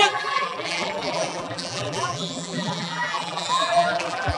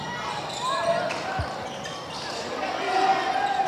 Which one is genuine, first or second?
second